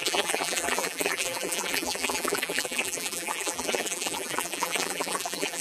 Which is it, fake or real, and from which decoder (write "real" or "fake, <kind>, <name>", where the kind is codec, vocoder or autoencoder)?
fake, vocoder, BigVGAN v2